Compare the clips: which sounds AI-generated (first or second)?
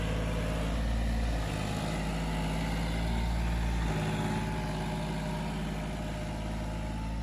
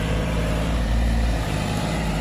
second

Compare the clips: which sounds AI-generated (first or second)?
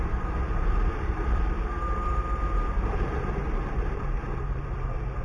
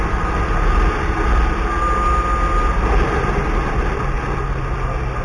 first